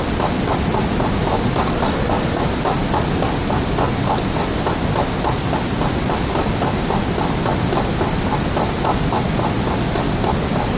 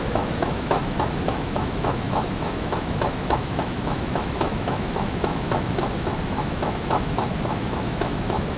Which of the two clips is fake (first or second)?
second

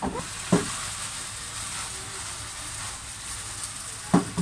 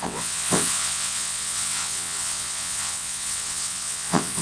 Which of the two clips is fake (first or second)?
second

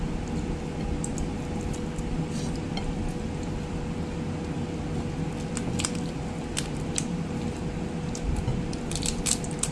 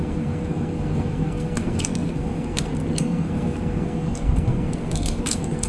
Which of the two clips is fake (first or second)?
second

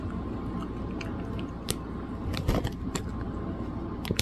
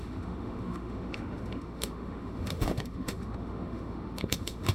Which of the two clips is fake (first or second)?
second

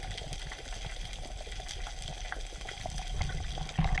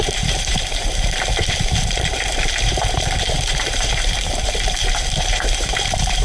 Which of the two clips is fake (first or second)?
second